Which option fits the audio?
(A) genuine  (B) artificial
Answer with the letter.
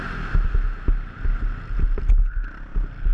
A